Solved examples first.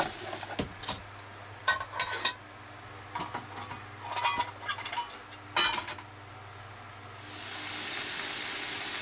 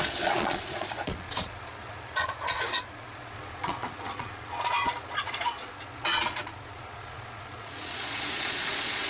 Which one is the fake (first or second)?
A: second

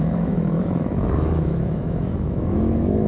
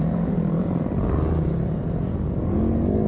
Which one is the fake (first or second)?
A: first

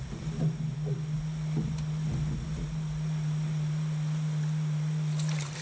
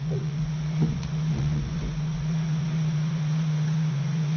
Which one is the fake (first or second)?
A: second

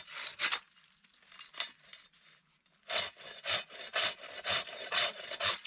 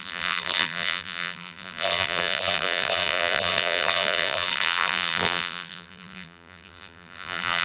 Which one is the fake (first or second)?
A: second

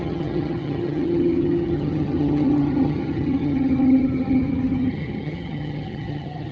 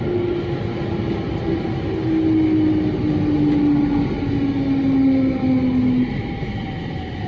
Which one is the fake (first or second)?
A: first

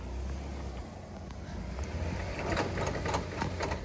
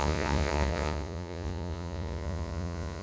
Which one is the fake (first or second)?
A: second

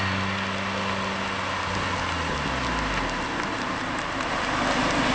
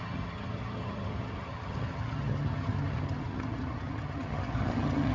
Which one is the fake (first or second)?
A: second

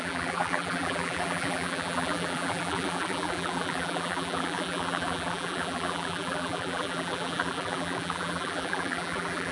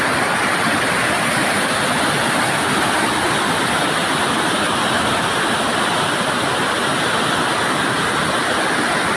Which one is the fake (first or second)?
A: first